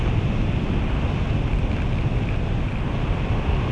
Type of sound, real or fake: real